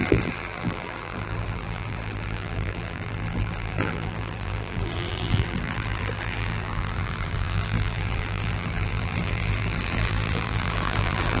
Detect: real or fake fake